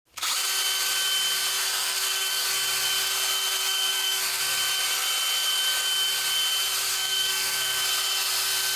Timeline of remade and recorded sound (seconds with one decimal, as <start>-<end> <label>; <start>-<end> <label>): 0.0-1.6 recorded; 1.6-2.5 remade; 2.5-3.6 recorded; 3.6-4.4 remade; 4.4-6.9 recorded; 6.9-7.8 remade; 7.8-8.8 recorded